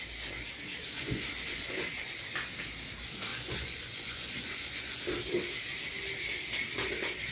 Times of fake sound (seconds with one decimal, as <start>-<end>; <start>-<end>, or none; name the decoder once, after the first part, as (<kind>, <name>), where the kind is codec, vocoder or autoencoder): 0.8-2.1 (vocoder, Vocos); 3.3-5.0